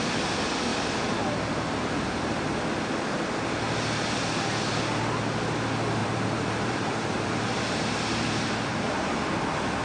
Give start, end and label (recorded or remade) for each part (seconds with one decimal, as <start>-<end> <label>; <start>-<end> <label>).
0.0-0.7 recorded; 0.7-2.5 remade; 2.5-6.0 recorded; 6.0-9.3 remade; 9.3-9.8 recorded